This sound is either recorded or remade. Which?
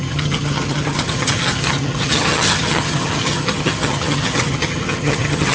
remade